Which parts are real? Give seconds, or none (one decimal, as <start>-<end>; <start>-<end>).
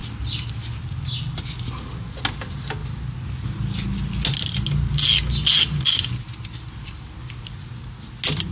0.0-8.5